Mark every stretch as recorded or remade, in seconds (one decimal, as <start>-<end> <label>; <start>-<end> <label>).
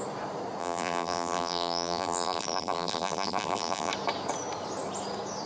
0.0-0.6 recorded; 0.6-3.9 remade; 3.9-5.5 recorded